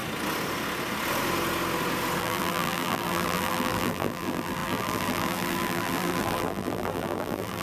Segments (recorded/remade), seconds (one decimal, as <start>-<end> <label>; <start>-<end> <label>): 0.0-2.2 recorded; 2.2-7.6 remade